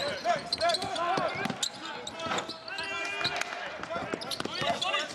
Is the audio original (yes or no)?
yes